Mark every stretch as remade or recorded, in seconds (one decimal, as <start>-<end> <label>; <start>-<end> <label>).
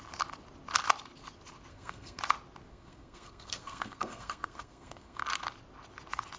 0.0-1.7 recorded; 1.7-2.2 remade; 2.2-2.7 recorded; 2.7-5.2 remade; 5.2-6.4 recorded